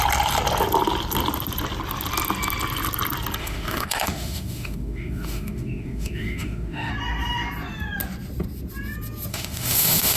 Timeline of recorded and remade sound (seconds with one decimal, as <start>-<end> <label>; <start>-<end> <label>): 0.0-3.4 recorded; 3.4-6.9 remade; 6.9-9.3 recorded; 9.3-10.2 remade